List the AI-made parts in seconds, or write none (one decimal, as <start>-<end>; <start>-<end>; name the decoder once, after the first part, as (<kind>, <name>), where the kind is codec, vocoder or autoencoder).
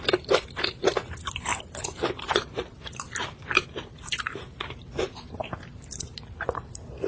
0.0-1.5 (vocoder, BigVGAN v2); 2.1-7.1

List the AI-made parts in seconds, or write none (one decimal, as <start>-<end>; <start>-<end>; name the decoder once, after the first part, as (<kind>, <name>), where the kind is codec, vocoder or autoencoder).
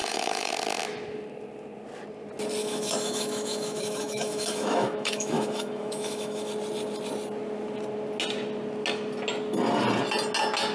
0.0-0.5 (autoencoder, DAC-VAE); 2.6-6.5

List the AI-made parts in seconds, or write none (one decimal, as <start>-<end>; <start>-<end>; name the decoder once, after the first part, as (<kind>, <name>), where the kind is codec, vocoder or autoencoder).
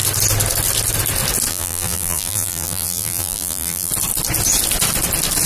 1.5-3.9 (vocoder, BigVGAN v2)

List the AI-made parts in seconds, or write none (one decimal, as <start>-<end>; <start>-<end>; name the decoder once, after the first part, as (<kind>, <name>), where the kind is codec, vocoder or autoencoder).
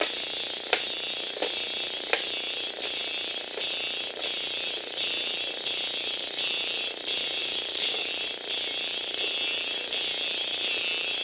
7.4-8.1 (codec, DAC)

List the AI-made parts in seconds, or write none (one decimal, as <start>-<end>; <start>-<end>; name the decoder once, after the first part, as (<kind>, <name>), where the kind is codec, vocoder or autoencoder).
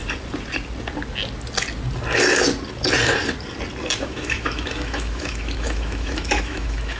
4.0-7.0 (autoencoder, DAC-VAE)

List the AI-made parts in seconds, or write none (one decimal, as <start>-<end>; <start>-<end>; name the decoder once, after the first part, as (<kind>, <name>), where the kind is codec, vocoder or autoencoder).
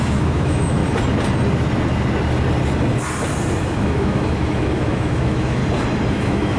0.0-0.8 (autoencoder, DAC-VAE); 3.6-5.6; 6.1-6.6